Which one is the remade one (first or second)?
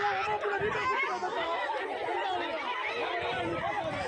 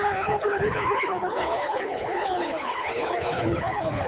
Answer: second